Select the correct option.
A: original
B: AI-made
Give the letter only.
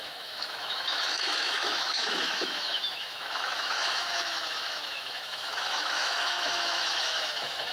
B